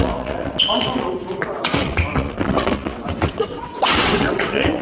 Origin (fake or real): fake